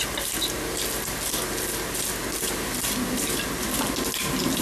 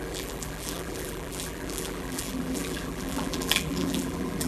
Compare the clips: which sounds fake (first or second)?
second